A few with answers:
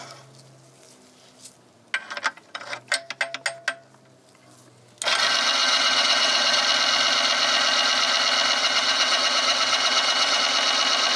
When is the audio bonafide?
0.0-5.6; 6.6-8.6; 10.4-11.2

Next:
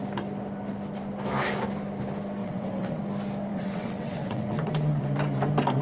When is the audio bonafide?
0.0-2.4; 3.0-3.5; 5.0-5.8

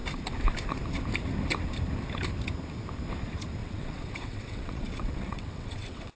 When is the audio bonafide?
0.0-3.6

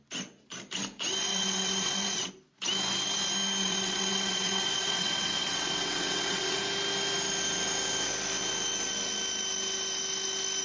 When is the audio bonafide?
0.0-1.3; 2.3-3.6; 6.6-10.6

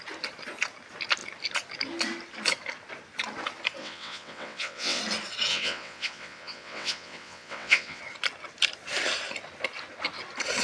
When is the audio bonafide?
0.0-3.8; 5.0-5.5; 8.0-10.6

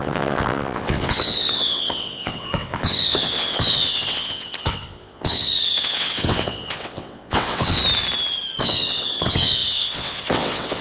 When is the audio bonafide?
7.8-8.6